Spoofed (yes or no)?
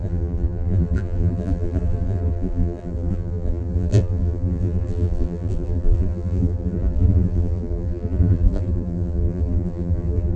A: yes